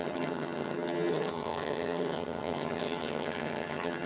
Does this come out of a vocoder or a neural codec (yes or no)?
yes